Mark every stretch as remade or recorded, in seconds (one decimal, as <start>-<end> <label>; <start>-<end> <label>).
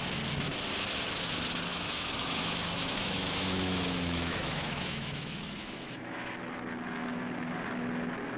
0.0-1.7 recorded; 1.7-6.3 remade; 6.3-8.4 recorded